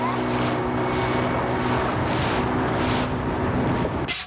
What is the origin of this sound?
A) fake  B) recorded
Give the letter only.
B